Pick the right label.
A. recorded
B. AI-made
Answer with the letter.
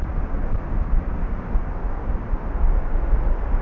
A